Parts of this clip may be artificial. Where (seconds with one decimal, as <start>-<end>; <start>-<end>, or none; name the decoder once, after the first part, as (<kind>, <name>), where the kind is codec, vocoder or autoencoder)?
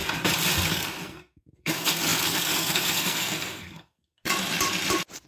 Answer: 0.7-4.3 (codec, SNAC)